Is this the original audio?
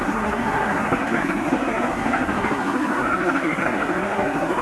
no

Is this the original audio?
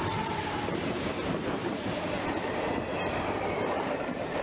no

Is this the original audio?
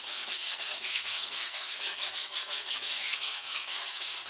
no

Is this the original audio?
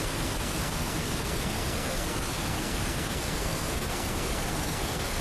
no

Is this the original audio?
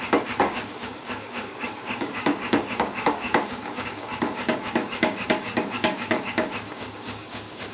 no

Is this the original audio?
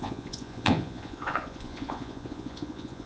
no